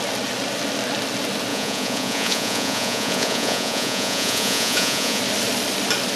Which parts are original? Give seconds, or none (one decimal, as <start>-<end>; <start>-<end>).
0.0-1.5; 5.2-6.2